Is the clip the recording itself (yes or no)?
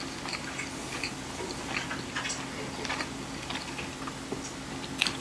yes